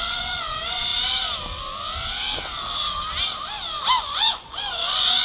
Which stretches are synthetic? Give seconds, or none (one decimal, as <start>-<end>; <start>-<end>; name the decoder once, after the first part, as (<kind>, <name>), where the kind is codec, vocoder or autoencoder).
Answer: 0.0-0.9 (vocoder, Vocos); 4.0-5.2